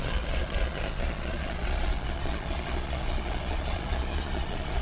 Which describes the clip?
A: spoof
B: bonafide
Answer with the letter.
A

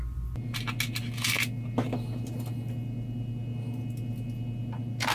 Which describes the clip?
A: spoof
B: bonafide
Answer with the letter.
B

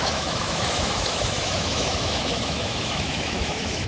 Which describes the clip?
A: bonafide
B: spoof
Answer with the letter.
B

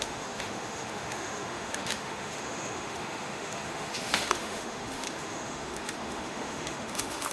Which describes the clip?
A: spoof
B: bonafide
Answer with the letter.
A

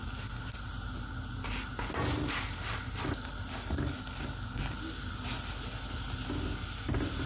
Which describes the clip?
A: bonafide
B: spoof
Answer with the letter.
A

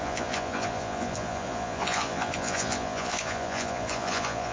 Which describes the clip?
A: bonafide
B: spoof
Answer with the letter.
B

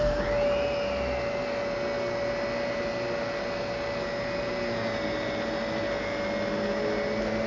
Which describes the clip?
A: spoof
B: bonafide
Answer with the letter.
B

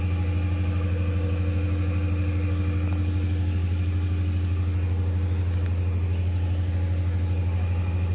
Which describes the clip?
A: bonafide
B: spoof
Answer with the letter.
A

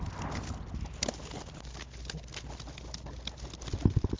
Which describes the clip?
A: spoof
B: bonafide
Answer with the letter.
B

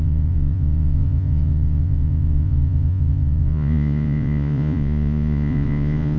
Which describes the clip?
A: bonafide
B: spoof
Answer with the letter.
B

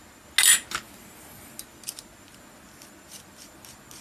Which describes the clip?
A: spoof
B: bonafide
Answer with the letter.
B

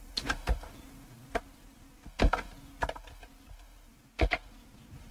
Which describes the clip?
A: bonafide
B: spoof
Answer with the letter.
A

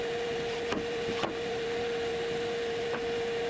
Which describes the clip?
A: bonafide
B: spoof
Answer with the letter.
A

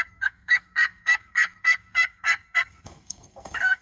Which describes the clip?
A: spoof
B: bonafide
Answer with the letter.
A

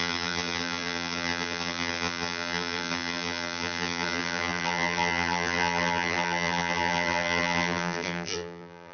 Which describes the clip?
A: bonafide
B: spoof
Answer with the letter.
B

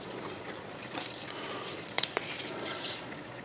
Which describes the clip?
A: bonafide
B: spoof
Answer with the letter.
B